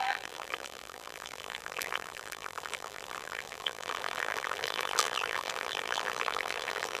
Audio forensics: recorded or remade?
remade